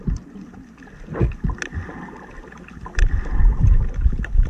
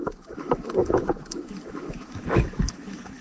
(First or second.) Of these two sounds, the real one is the first